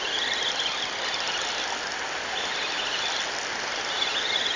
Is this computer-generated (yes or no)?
no